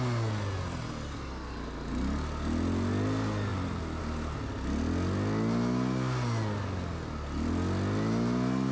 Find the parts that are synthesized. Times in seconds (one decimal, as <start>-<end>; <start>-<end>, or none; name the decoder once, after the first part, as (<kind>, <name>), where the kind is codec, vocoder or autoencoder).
none